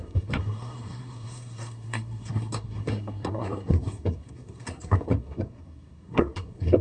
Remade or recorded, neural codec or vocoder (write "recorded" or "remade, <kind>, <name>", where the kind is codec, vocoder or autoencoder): remade, codec, SNAC